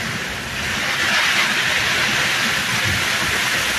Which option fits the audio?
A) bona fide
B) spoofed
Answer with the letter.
A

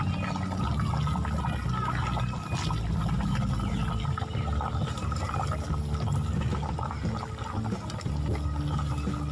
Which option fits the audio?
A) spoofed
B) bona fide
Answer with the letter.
B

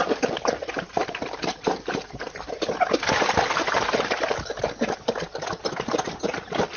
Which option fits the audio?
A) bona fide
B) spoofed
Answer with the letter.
A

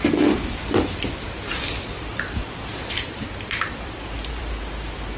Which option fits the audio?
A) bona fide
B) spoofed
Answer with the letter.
B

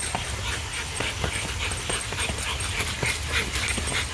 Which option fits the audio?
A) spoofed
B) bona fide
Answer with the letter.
B